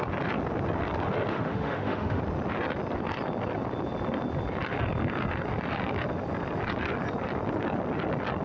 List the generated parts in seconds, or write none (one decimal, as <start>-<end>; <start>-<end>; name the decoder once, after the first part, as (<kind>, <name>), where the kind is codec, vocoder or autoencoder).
1.3-2.2 (autoencoder, DAC-VAE)